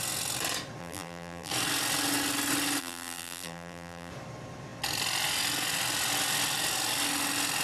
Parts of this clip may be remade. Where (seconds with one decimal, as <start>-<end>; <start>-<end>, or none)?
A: 0.8-1.5; 2.8-4.1